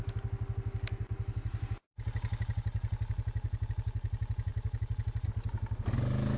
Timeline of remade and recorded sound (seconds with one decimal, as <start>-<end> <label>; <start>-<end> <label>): 0.0-6.4 recorded